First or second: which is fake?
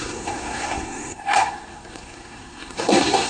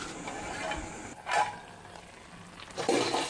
first